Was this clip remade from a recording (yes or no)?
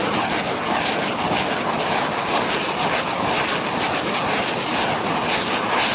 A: no